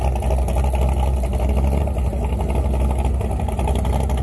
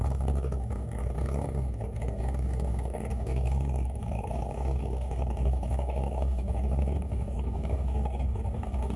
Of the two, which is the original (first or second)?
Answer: first